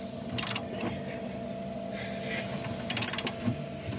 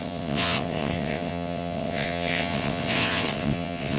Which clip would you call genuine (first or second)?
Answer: first